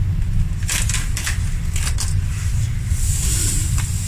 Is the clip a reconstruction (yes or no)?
no